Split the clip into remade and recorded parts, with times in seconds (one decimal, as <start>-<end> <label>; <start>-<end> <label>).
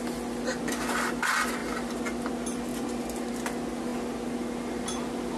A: 0.0-5.4 recorded